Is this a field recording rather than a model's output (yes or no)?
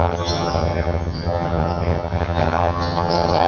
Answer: no